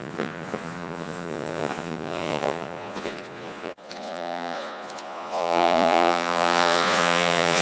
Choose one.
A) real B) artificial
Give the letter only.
B